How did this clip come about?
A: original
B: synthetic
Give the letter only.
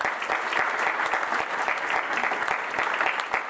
A